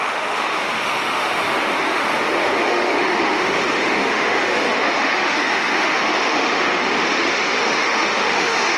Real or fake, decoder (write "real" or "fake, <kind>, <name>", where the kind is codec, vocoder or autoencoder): fake, autoencoder, DAC-VAE